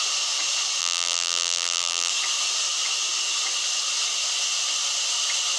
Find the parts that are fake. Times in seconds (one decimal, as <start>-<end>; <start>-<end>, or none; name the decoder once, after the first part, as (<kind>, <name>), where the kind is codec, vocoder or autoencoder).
0.8-2.1 (vocoder, BigVGAN v2)